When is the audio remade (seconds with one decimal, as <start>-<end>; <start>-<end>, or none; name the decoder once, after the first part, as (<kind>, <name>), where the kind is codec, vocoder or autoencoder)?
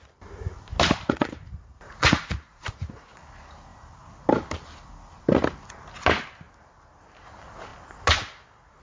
1.0-3.2 (vocoder, Vocos)